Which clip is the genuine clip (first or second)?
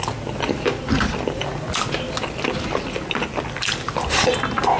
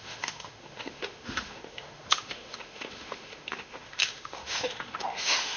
first